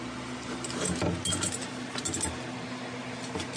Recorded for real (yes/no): yes